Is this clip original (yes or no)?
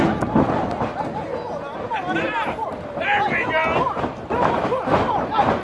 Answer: yes